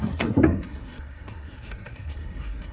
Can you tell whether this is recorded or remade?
remade